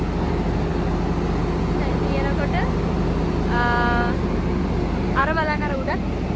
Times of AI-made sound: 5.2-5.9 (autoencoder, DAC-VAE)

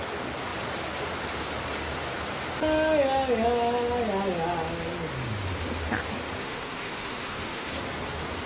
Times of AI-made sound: 6.4-7.7 (autoencoder, DAC-VAE)